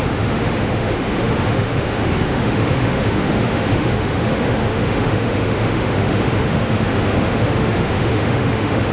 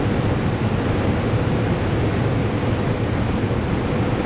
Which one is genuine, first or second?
second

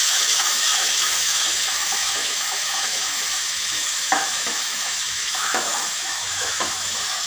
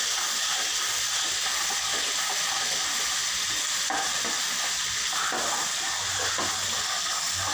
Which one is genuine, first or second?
second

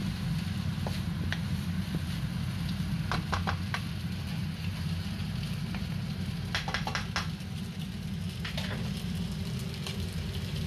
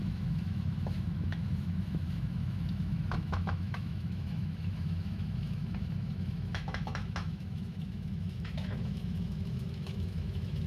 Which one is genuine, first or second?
first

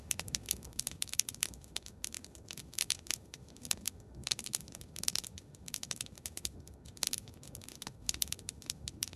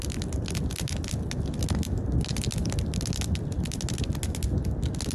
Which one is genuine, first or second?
second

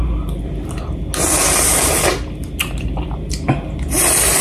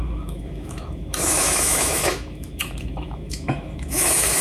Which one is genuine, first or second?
first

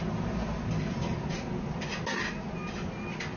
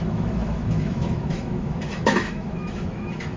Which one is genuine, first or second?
first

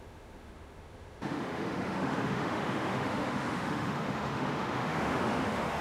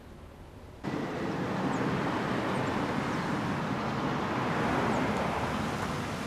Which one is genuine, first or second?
second